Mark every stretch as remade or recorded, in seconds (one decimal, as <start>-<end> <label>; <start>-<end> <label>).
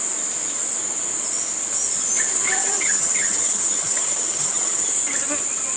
0.0-2.6 recorded; 2.6-4.9 remade; 4.9-5.8 recorded